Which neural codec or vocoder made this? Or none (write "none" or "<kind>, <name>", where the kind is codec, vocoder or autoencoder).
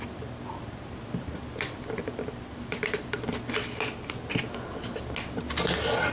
none